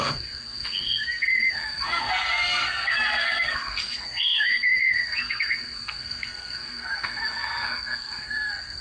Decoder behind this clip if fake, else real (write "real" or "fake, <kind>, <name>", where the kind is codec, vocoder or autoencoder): fake, codec, SNAC